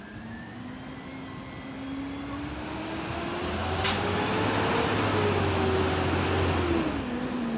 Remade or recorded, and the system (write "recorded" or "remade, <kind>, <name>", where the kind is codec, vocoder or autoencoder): recorded